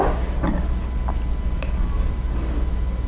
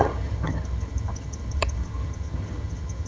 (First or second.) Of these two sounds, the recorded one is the first